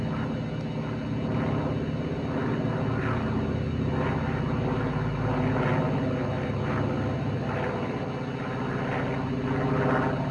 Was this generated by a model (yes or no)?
no